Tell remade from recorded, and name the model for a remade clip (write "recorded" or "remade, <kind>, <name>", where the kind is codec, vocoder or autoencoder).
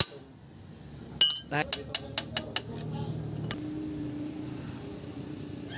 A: recorded